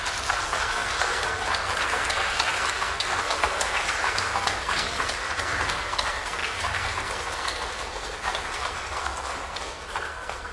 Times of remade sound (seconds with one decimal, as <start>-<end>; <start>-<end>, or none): 0.0-10.5